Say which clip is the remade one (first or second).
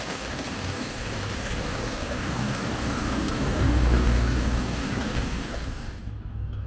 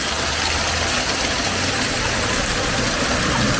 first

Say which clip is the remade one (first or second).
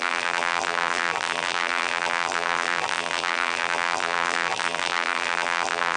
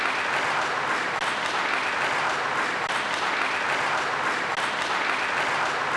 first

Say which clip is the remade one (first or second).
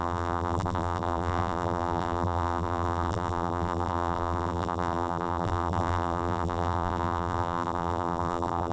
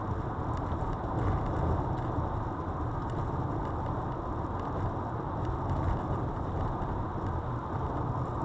first